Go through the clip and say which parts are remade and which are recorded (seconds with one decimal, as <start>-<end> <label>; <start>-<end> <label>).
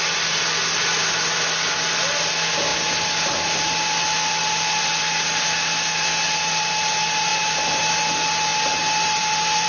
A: 0.0-7.3 recorded; 7.3-7.9 remade; 7.9-8.5 recorded; 8.5-9.7 remade